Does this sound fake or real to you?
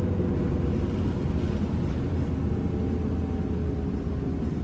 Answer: real